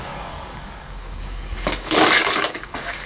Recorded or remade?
remade